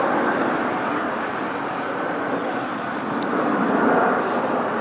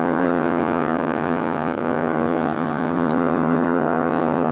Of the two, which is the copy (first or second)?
second